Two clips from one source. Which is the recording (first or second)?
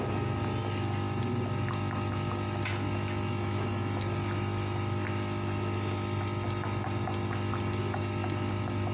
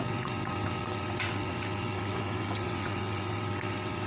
first